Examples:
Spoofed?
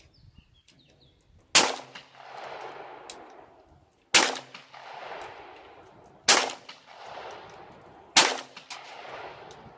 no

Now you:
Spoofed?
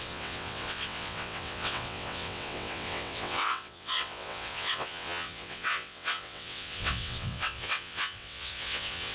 yes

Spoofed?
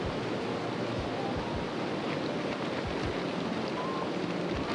no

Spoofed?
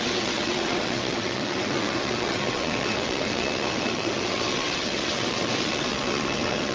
yes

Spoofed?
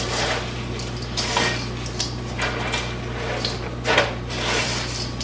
no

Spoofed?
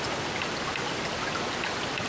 no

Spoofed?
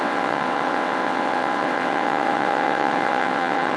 yes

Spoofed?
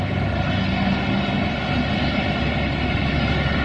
no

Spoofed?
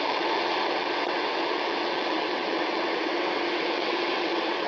yes